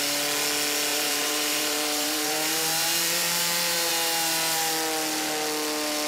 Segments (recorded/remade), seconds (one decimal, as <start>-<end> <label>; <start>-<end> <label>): 0.0-0.9 recorded; 0.9-3.9 remade; 3.9-6.1 recorded